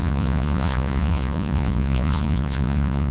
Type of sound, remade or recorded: remade